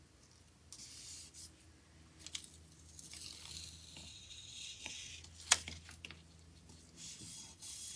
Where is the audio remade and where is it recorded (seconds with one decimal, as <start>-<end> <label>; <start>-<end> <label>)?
0.0-4.1 recorded; 4.1-5.1 remade; 5.1-7.3 recorded; 7.3-8.0 remade